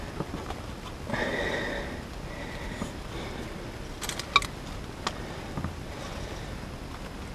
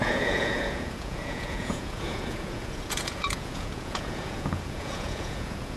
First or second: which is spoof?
second